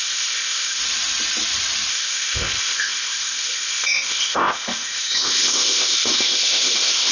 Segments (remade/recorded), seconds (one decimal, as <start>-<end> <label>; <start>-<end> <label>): 0.0-0.8 remade; 0.8-1.9 recorded; 1.9-7.1 remade